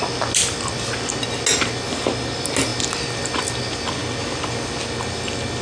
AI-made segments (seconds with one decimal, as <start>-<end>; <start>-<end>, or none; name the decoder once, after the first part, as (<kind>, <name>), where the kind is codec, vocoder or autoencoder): none